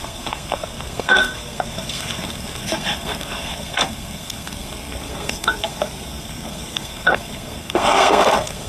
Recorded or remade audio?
remade